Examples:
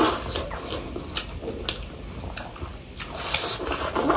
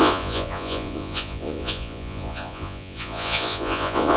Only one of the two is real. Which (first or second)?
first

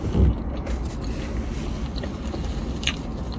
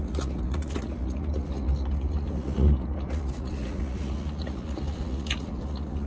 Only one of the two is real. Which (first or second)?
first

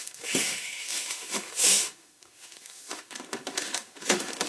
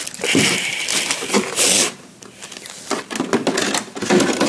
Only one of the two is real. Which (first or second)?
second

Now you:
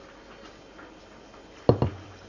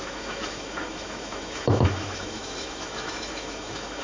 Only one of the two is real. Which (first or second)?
first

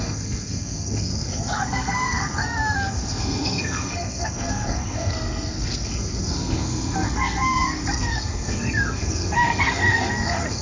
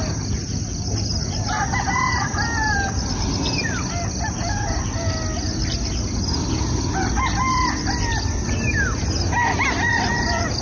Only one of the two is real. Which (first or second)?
second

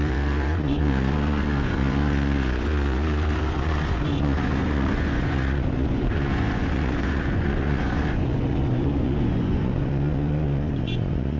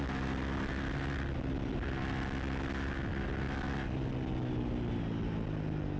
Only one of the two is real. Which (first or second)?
second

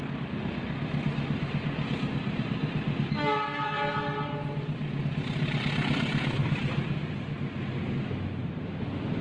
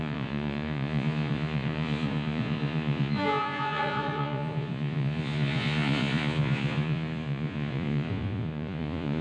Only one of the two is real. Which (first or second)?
first